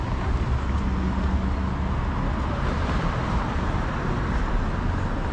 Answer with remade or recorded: recorded